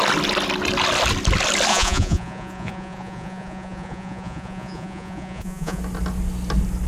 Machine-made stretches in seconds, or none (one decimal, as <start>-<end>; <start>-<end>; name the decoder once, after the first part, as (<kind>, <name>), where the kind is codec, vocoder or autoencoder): 1.7-5.8 (vocoder, Vocos)